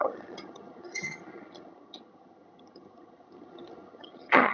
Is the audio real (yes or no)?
no